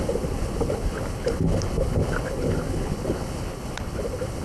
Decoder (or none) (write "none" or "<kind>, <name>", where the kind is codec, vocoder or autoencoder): codec, HILCodec